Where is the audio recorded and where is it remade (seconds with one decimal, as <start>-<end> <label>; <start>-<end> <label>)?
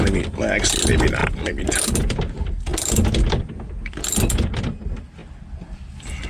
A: 0.0-6.3 recorded